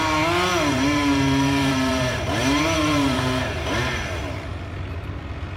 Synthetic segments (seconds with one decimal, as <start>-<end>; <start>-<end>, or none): 0.5-3.9